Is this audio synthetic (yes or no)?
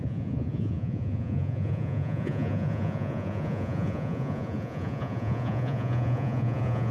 yes